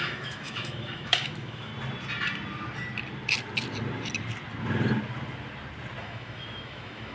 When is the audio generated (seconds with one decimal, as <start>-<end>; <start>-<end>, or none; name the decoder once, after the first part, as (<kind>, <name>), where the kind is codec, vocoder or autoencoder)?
0.0-1.7 (autoencoder, DAC-VAE); 6.0-7.1